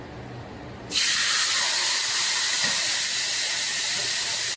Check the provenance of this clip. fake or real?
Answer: real